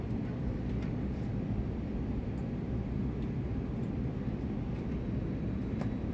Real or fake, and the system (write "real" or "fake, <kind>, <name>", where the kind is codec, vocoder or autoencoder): real